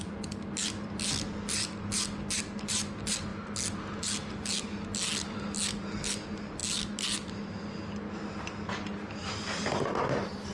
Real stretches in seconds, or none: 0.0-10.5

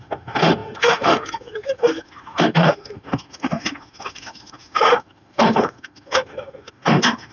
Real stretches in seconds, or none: none

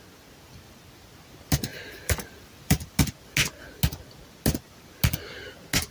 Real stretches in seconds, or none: 0.0-1.7; 3.0-5.9

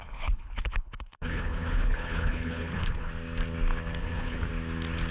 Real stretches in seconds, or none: 3.1-4.0; 4.5-5.1